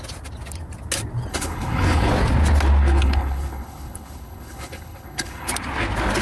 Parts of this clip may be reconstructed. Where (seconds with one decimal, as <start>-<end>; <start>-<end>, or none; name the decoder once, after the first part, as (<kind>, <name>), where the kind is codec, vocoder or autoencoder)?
1.3-2.1 (codec, HILCodec); 2.8-5.5